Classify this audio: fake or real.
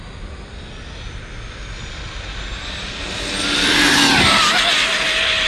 real